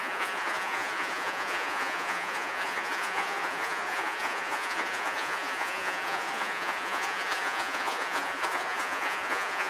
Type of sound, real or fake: fake